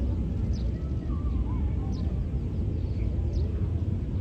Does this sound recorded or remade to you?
recorded